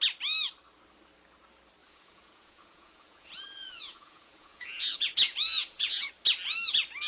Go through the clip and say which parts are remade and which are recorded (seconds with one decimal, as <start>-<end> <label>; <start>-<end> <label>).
0.0-1.8 recorded; 1.8-6.1 remade; 6.1-7.1 recorded

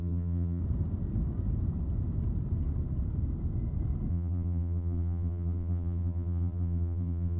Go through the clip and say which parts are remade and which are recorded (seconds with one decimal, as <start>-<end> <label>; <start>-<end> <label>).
0.0-0.6 remade; 0.6-4.1 recorded; 4.1-7.4 remade

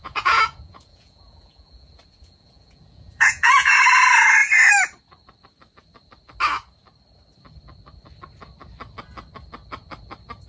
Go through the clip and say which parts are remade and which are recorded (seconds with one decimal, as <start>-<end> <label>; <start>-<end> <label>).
0.0-3.7 remade; 3.7-10.5 recorded

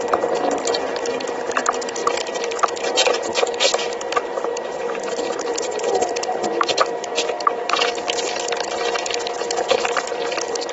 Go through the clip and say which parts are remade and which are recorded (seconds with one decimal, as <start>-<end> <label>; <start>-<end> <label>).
0.0-2.0 recorded; 2.0-6.9 remade; 6.9-10.7 recorded

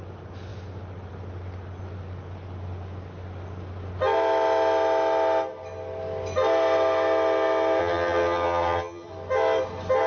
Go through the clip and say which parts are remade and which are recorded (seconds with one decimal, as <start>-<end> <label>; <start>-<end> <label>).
0.0-7.8 recorded; 7.8-9.1 remade; 9.1-10.1 recorded

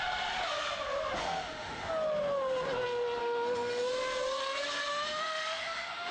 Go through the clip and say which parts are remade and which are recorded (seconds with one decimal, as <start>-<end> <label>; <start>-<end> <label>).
0.0-1.2 recorded; 1.2-1.9 remade; 1.9-3.2 recorded; 3.2-3.9 remade; 3.9-4.9 recorded; 4.9-6.1 remade

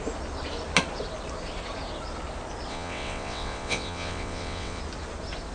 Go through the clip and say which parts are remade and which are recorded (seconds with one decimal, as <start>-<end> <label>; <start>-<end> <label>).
0.0-2.7 recorded; 2.7-4.8 remade; 4.8-5.5 recorded